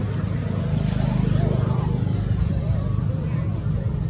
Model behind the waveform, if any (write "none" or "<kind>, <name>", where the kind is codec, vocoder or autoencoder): none